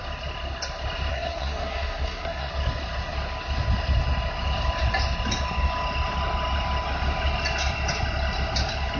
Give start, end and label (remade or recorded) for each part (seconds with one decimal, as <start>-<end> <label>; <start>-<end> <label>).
0.0-1.1 recorded; 1.1-2.5 remade; 2.5-9.0 recorded